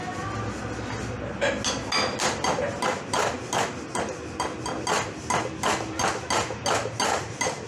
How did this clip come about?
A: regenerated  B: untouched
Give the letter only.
B